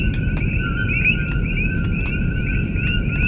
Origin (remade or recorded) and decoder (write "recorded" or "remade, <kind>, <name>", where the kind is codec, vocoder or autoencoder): recorded